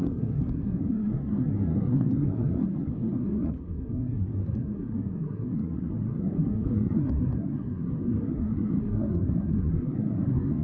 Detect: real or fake fake